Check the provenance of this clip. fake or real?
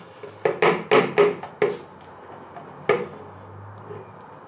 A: real